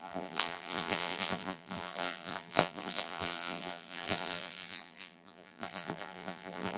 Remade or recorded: remade